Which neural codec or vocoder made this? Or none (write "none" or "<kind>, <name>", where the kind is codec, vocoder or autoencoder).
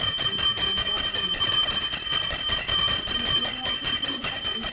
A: none